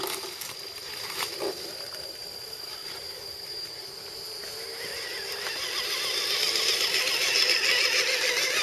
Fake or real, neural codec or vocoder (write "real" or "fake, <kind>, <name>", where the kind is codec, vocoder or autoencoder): real